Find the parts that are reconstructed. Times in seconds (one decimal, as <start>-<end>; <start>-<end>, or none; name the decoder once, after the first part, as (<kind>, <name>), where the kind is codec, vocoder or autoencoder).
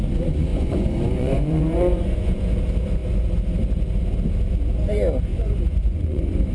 0.5-2.6 (vocoder, Vocos); 5.3-6.5